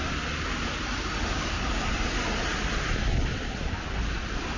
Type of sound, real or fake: real